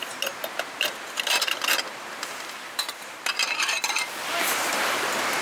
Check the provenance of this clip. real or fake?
fake